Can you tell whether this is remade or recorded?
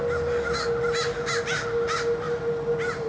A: recorded